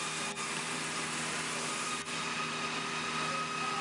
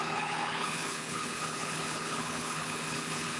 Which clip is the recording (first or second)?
first